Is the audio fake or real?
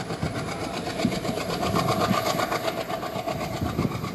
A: real